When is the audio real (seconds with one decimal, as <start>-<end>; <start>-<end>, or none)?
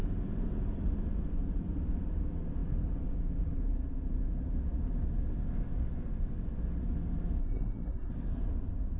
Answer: 0.0-7.4; 8.1-9.0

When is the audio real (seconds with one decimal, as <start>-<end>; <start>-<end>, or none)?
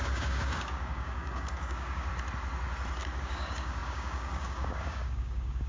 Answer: 2.1-3.2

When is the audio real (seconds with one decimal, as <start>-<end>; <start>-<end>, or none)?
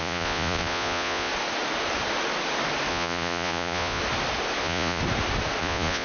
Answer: 1.3-2.9; 4.0-4.6; 5.0-5.6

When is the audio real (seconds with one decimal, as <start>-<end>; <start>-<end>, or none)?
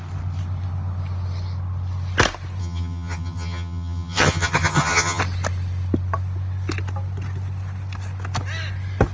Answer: 0.0-2.6; 5.2-9.1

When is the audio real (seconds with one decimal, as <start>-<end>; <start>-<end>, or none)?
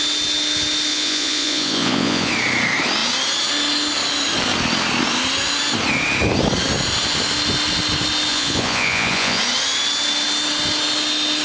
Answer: 0.0-0.9; 2.3-8.3; 9.4-11.4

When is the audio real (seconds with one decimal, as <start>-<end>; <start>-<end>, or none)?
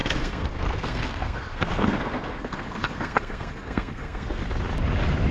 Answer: 4.4-5.3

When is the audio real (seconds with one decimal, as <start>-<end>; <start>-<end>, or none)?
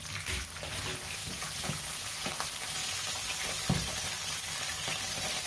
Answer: 0.0-1.2; 2.3-5.5